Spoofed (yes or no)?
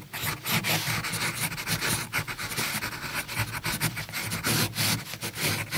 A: no